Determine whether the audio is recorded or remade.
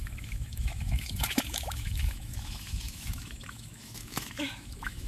remade